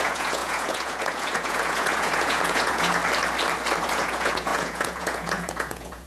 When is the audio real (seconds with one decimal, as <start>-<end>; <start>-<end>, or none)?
3.0-3.8